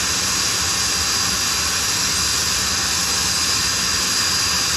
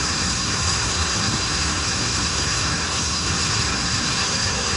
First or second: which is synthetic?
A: second